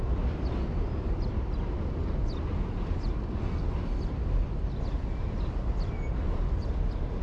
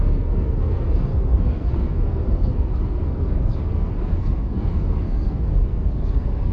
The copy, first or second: second